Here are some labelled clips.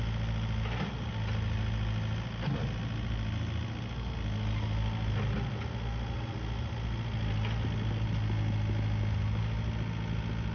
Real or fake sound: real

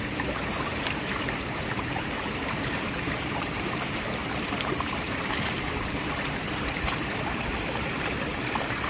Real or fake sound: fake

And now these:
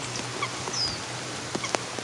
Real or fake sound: real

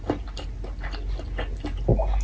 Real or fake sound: real